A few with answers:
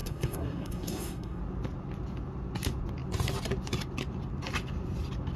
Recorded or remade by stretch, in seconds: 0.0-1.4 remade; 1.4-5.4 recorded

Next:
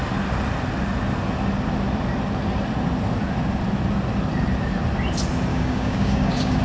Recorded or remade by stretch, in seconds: 0.0-5.5 recorded; 5.5-6.6 remade

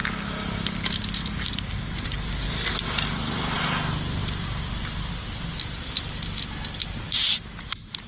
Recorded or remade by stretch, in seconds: 0.0-8.1 recorded

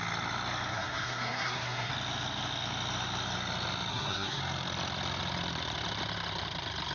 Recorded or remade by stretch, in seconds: 0.0-0.7 recorded; 0.7-1.9 remade; 1.9-3.9 recorded; 3.9-4.4 remade; 4.4-6.9 recorded

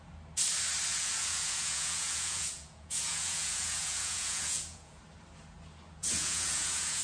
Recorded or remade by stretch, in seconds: 0.0-0.9 recorded; 0.9-5.0 remade; 5.0-6.0 recorded; 6.0-7.0 remade

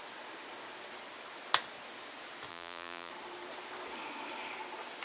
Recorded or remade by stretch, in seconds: 0.0-2.5 recorded; 2.5-3.1 remade; 3.1-5.0 recorded

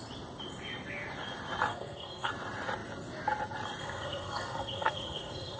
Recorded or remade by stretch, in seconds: 0.0-1.7 recorded; 1.7-2.3 remade; 2.3-3.8 recorded; 3.8-5.6 remade

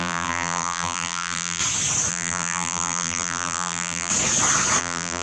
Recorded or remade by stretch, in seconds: 0.0-1.6 remade; 1.6-2.1 recorded; 2.1-4.1 remade; 4.1-4.8 recorded; 4.8-5.2 remade